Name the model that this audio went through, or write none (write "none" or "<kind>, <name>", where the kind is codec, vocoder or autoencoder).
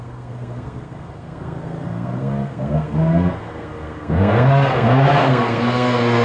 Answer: codec, SNAC